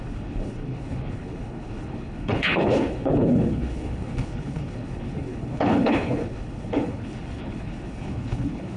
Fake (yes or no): yes